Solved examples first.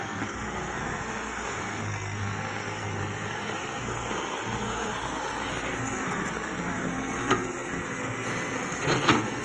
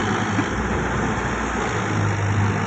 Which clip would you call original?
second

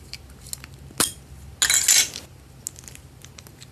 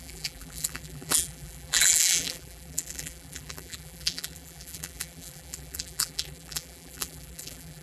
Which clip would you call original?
first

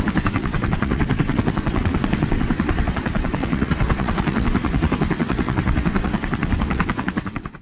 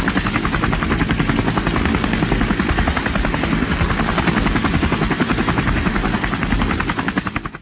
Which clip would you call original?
second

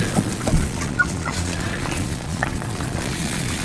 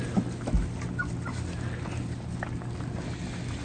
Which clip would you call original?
second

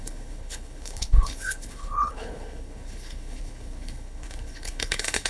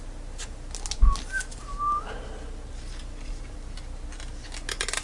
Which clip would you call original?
second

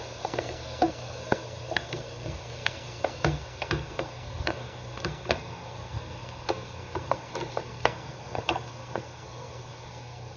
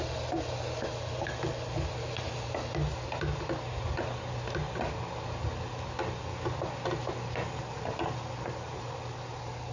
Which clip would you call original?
second